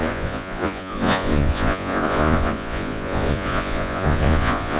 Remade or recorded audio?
remade